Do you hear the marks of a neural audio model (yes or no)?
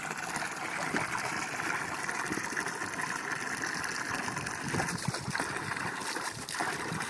yes